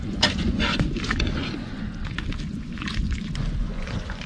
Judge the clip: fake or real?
fake